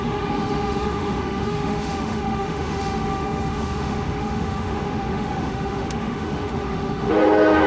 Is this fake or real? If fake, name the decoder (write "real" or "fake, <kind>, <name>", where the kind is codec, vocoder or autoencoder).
fake, autoencoder, DAC-VAE